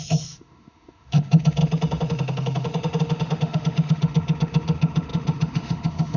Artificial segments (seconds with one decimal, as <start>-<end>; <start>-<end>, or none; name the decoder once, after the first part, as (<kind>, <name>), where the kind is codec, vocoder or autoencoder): 0.0-6.2 (autoencoder, DAC-VAE)